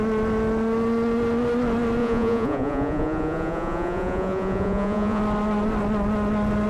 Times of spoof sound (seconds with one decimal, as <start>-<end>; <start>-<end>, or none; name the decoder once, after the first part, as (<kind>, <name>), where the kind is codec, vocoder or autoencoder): 2.0-5.2 (vocoder, Vocos)